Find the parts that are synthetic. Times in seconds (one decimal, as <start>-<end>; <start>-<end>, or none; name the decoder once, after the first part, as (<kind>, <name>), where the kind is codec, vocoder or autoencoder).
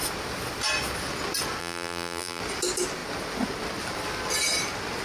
1.6-2.4 (vocoder, BigVGAN v2)